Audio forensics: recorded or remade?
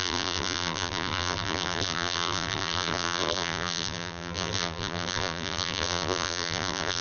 remade